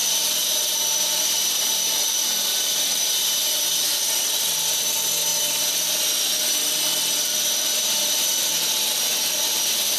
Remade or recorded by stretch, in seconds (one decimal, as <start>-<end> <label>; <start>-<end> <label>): 0.0-4.0 remade; 4.0-10.0 recorded